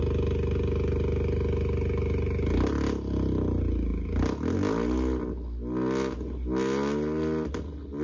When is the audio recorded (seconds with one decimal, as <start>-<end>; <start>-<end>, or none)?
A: 0.0-8.0